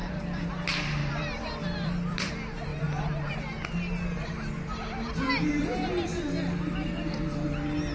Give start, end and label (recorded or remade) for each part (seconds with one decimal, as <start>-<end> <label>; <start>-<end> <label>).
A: 0.0-0.5 remade; 0.5-1.0 recorded; 1.0-2.3 remade; 2.3-7.9 recorded